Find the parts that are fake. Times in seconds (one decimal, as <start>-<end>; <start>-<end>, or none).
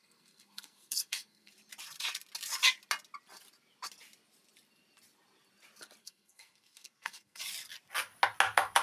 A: 0.0-1.5; 6.0-7.4